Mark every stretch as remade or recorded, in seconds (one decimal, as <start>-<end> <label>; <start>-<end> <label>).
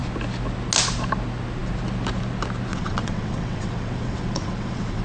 0.0-2.7 recorded; 2.7-5.0 remade